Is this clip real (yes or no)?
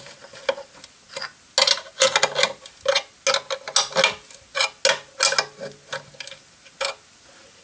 yes